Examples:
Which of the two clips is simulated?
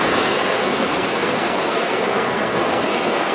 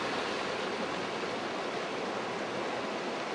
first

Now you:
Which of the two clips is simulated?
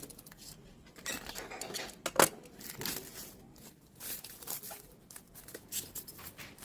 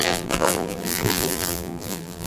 second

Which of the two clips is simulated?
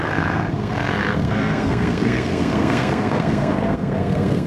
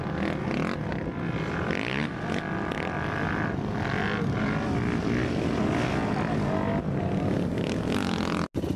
first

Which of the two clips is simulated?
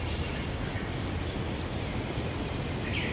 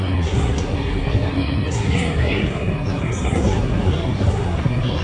second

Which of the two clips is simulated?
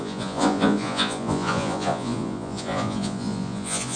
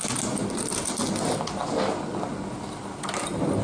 first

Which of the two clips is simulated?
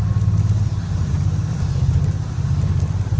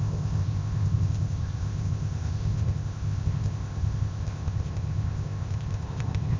second